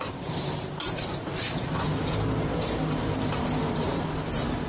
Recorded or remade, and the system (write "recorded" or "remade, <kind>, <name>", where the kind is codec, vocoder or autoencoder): remade, vocoder, BigVGAN v2